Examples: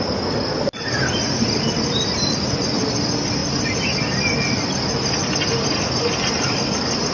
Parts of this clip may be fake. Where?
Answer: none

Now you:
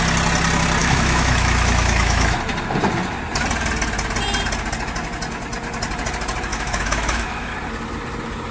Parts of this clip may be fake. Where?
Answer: 0.8-2.4; 6.5-7.5

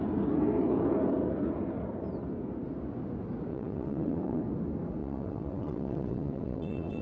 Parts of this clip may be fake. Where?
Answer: 3.5-4.4; 5.0-7.0

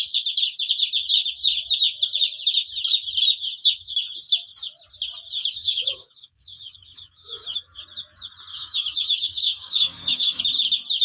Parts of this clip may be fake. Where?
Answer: 5.6-7.8; 8.5-10.4

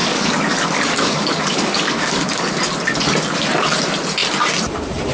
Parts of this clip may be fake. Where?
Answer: 0.0-2.5

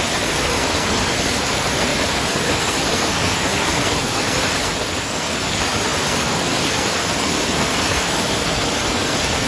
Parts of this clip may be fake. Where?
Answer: 0.0-9.5

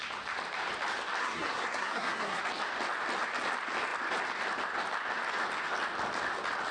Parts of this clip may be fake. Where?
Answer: 1.2-2.4